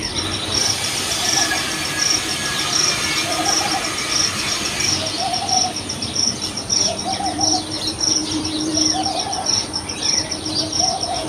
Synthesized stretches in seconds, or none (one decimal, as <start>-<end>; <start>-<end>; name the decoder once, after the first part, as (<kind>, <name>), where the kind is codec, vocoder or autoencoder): 0.0-11.3 (vocoder, BigVGAN v2)